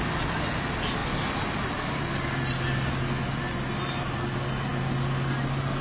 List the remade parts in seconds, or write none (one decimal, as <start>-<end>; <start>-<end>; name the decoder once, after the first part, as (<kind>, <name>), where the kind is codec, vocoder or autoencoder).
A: none